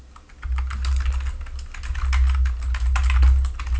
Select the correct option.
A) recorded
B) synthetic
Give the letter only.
A